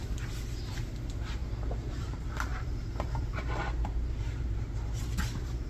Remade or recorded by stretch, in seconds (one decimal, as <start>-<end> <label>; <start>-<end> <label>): 0.0-1.4 remade; 1.4-1.9 recorded; 1.9-5.7 remade